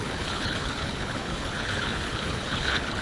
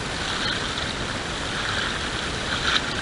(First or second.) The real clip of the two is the second